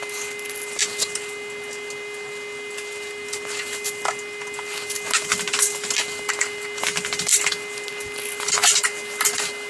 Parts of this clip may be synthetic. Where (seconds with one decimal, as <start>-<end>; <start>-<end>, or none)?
none